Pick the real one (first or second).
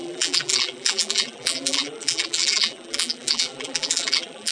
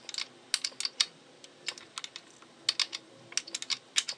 second